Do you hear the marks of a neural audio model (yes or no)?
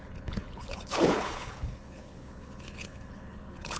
yes